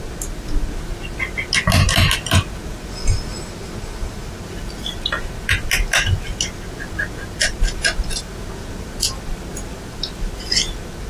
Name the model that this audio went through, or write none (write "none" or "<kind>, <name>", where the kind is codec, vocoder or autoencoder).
none